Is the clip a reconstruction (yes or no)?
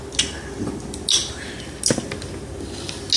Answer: no